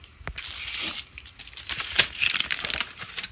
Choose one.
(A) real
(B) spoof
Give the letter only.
B